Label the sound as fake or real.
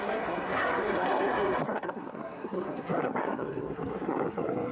fake